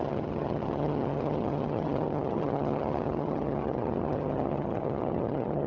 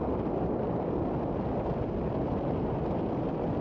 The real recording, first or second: second